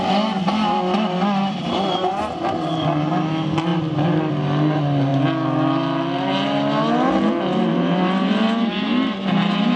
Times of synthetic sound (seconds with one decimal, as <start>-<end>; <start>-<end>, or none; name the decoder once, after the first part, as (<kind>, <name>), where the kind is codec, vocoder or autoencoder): 1.4-2.4 (vocoder, BigVGAN v2)